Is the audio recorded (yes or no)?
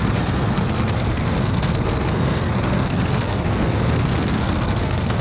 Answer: no